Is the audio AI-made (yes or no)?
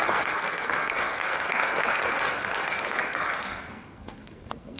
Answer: yes